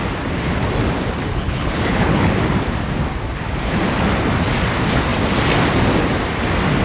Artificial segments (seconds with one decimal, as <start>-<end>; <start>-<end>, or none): 1.3-2.3

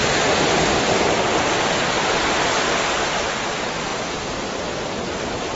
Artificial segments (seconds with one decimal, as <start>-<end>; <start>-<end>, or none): 3.4-3.9; 4.9-5.6

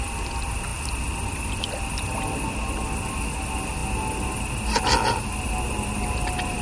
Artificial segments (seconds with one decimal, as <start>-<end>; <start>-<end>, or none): none

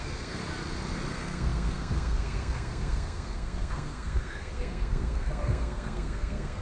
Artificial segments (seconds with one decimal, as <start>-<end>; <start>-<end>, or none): 0.0-0.4; 1.1-6.6

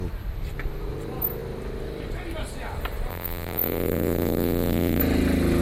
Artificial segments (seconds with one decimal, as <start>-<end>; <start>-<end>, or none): 3.1-5.0

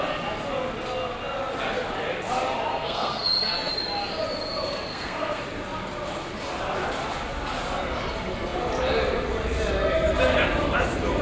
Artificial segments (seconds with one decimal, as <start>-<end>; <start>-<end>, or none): 2.7-3.7; 4.9-5.4

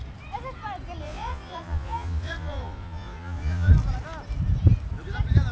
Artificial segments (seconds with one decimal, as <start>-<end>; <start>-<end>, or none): 1.0-3.7